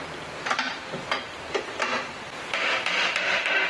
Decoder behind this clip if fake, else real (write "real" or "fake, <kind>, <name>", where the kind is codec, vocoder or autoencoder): fake, vocoder, BigVGAN v2